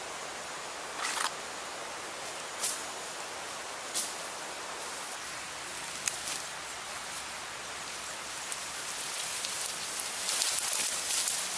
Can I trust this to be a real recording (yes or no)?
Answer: yes